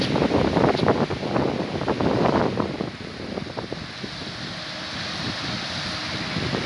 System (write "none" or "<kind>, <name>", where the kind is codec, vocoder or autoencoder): none